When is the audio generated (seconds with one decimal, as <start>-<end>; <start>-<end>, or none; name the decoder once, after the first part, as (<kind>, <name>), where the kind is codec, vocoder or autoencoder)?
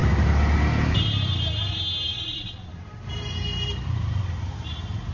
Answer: 2.1-2.8 (vocoder, Vocos)